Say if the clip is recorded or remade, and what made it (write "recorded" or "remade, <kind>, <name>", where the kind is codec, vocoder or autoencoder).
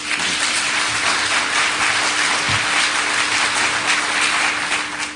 recorded